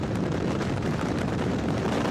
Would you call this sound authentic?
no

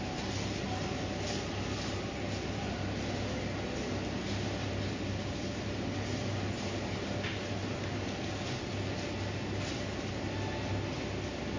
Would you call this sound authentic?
yes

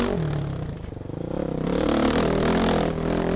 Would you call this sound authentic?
yes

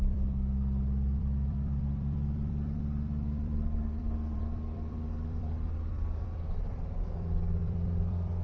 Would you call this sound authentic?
no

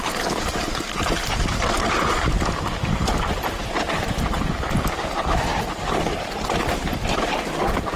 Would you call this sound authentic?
no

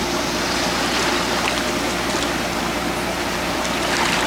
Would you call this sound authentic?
yes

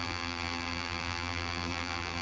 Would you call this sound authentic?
no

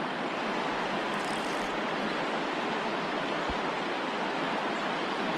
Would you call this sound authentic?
yes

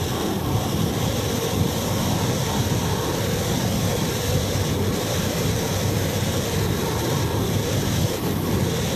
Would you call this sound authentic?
yes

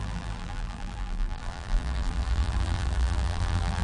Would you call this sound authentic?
no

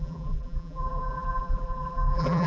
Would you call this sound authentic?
no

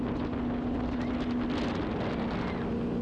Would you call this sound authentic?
yes